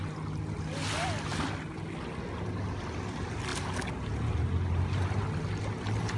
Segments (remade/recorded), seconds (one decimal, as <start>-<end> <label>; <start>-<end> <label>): 0.0-6.2 recorded